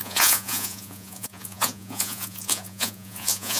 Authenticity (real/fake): fake